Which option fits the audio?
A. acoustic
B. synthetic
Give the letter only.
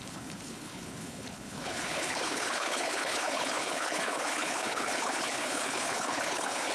B